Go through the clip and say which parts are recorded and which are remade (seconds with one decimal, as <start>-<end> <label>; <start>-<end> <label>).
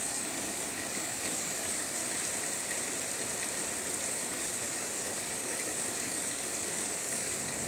0.0-2.0 remade; 2.0-4.1 recorded; 4.1-7.7 remade